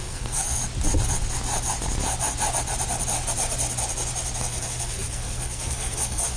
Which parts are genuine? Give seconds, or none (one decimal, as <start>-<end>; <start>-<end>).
0.6-4.4